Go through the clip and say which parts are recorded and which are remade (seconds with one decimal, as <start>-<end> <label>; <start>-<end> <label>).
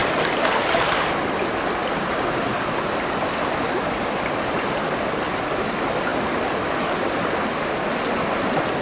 0.0-0.6 recorded; 0.6-6.1 remade; 6.1-8.2 recorded; 8.2-8.8 remade